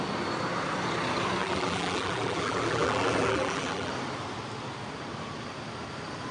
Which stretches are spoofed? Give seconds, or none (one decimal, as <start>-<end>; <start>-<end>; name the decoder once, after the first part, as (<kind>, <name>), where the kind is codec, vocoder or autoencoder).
1.4-3.9 (vocoder, BigVGAN v2)